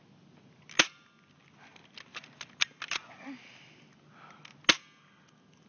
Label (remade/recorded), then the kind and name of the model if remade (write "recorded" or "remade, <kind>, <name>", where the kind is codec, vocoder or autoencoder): recorded